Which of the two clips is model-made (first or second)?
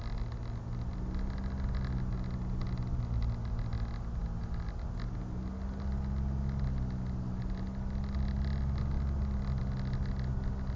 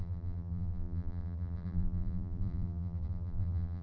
second